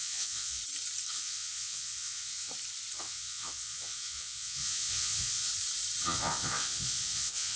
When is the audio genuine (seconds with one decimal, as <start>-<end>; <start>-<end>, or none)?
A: 0.6-1.1; 2.5-3.0; 5.5-6.0